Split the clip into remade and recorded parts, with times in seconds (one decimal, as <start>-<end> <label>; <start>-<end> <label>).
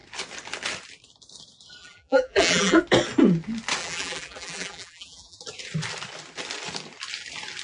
0.0-1.8 recorded; 1.8-2.8 remade; 2.8-3.8 recorded; 3.8-5.4 remade; 5.4-7.6 recorded